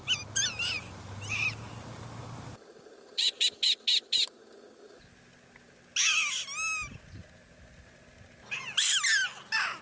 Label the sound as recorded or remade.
recorded